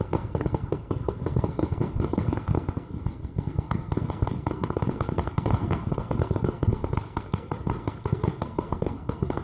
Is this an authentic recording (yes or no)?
no